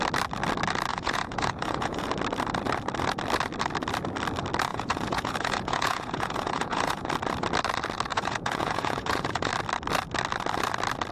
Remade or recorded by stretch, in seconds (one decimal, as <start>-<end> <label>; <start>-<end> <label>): 0.0-0.9 recorded; 0.9-2.1 remade; 2.1-4.7 recorded; 4.7-7.1 remade; 7.1-8.1 recorded; 8.1-9.5 remade; 9.5-11.1 recorded